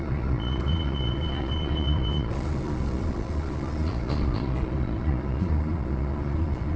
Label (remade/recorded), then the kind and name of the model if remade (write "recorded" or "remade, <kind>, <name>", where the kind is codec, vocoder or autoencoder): remade, vocoder, Vocos